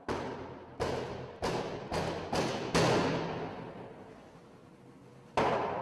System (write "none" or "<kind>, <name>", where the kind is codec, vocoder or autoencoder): none